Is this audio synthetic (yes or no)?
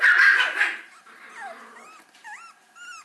no